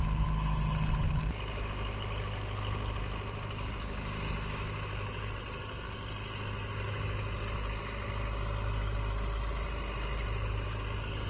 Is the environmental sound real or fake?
real